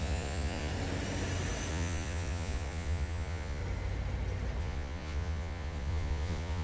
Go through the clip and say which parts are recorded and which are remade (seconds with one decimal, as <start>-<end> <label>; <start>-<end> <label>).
0.0-0.7 remade; 0.7-1.7 recorded; 1.7-3.6 remade; 3.6-4.6 recorded; 4.6-6.6 remade